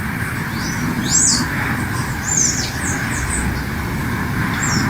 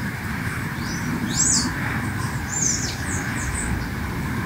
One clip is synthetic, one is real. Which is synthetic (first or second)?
second